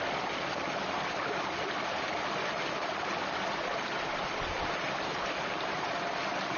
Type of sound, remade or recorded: recorded